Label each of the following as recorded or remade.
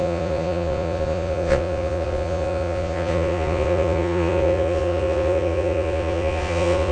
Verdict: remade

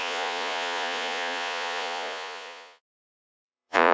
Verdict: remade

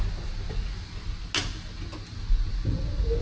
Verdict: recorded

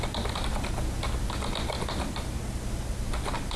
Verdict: recorded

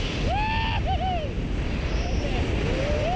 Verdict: recorded